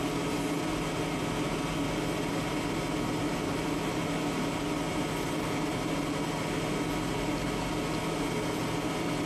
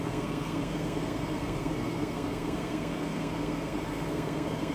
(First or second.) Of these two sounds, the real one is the first